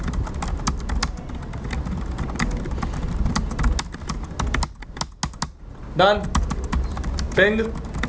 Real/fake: real